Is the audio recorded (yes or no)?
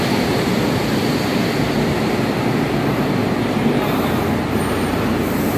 yes